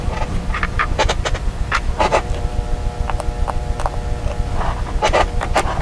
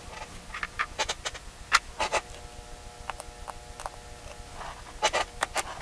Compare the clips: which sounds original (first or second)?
second